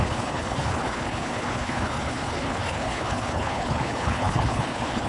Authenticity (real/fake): fake